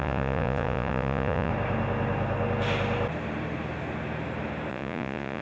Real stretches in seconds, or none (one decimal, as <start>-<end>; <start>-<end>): 1.5-4.7